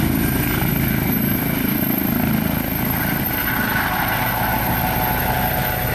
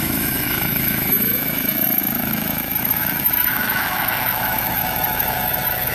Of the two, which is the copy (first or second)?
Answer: second